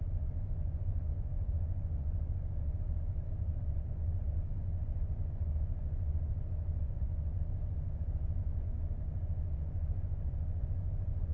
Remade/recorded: remade